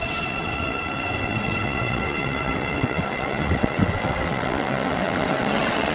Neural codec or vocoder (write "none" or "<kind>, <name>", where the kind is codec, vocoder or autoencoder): vocoder, WaveNeXt